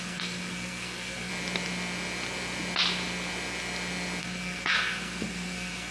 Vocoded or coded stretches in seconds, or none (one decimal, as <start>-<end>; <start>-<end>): 0.0-1.3; 4.2-5.9